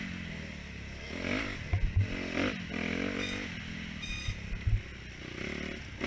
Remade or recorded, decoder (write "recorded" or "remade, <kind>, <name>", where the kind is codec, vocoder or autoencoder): recorded